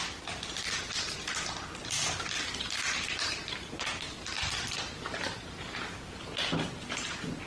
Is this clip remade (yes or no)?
yes